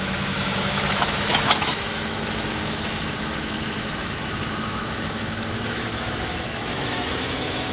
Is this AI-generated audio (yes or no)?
yes